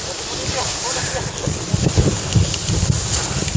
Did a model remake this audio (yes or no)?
no